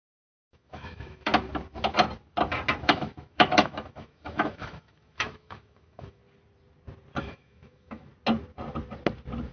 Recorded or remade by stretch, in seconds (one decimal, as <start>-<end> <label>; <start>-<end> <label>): 0.0-1.3 remade; 1.3-2.8 recorded; 2.8-6.2 remade; 6.2-7.2 recorded; 7.2-8.1 remade; 8.1-9.5 recorded